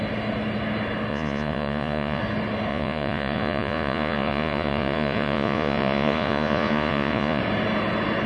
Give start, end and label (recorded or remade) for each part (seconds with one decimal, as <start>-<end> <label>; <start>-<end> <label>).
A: 0.0-1.1 recorded; 1.1-2.2 remade; 2.2-2.7 recorded; 2.7-7.4 remade; 7.4-8.3 recorded